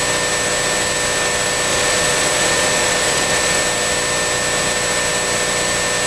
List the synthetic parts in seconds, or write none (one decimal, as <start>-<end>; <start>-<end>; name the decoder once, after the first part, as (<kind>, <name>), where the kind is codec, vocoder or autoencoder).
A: 1.7-3.6 (vocoder, Vocos)